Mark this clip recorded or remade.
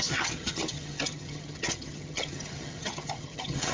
remade